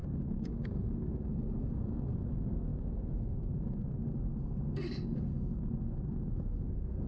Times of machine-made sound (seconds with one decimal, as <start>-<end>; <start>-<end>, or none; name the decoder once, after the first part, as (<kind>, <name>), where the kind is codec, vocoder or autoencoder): 0.0-7.1 (codec, SNAC)

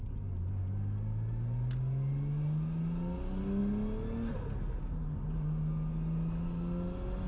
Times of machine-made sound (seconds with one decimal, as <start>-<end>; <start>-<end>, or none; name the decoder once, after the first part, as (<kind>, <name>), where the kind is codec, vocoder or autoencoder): none

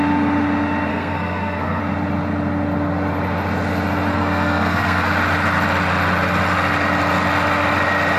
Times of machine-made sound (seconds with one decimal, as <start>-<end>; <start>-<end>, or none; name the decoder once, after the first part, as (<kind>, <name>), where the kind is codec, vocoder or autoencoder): 0.9-1.8 (codec, SNAC); 4.1-5.1

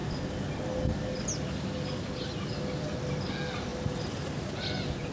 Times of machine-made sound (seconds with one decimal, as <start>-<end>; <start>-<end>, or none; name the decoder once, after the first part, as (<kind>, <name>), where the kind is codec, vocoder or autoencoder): none

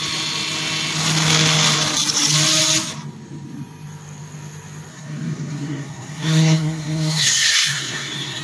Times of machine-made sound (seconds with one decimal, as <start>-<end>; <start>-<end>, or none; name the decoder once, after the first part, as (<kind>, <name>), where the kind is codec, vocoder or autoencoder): 4.9-8.4 (codec, SNAC)